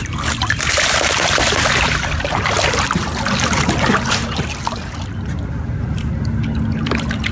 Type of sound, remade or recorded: recorded